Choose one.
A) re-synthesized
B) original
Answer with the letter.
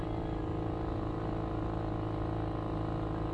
B